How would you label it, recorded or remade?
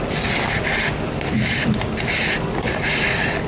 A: recorded